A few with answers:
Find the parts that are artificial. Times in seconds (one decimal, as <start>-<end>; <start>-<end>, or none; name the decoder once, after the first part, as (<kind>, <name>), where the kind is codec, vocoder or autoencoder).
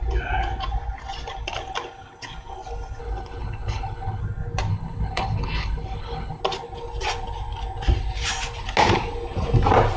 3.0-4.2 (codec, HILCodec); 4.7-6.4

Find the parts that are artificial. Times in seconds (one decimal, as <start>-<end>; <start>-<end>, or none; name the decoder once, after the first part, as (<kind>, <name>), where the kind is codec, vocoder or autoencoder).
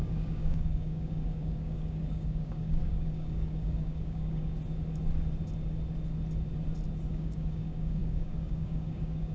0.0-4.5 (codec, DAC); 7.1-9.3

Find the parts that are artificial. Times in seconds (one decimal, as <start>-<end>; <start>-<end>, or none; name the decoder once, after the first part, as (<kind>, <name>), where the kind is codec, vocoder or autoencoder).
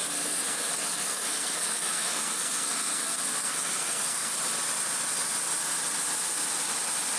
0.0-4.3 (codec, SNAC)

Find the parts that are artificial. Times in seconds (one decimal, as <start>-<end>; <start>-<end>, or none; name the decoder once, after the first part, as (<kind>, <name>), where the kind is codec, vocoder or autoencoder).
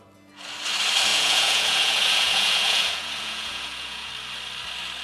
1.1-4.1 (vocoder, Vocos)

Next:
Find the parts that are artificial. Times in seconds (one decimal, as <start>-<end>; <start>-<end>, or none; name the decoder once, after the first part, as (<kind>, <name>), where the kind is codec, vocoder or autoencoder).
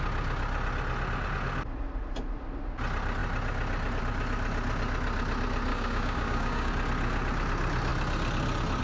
5.7-6.7 (codec, DAC)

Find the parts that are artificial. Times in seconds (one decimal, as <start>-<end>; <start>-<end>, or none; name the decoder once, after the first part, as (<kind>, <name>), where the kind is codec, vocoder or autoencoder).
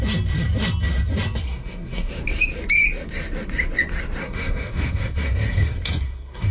1.4-2.1 (codec, SNAC); 4.2-6.5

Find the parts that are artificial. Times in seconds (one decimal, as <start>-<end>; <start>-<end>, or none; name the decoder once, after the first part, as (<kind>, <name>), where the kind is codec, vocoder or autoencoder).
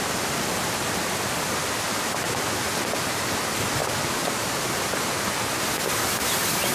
3.8-4.7 (vocoder, BigVGAN v2)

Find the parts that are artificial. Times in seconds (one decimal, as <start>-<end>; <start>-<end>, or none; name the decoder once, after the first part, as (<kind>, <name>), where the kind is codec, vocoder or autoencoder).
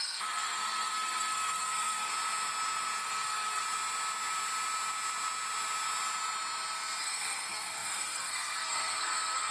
0.0-2.1 (codec, SNAC); 3.0-3.6; 7.0-9.5